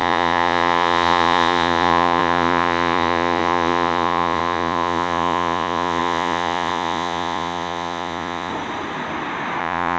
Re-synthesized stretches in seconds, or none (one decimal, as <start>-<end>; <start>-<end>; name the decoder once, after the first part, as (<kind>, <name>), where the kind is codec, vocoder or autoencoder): 0.0-8.5 (vocoder, Vocos); 9.6-10.0